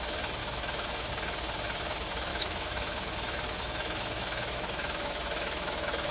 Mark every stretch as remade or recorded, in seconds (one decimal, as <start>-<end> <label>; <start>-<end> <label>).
0.0-0.4 recorded; 0.4-1.1 remade; 1.1-2.3 recorded; 2.3-6.1 remade